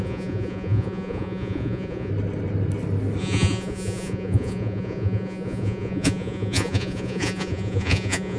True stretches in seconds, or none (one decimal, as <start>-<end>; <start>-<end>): 2.1-3.2